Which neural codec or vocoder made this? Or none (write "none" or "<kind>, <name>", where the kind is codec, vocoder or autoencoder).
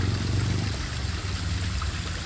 none